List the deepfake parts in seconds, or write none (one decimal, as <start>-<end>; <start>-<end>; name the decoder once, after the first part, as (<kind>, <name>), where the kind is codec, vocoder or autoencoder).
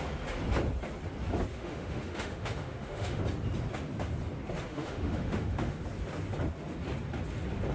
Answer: 1.5-3.2 (autoencoder, DAC-VAE); 4.7-5.8